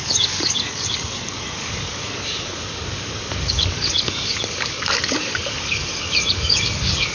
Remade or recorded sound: remade